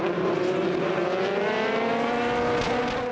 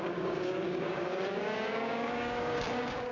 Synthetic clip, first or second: second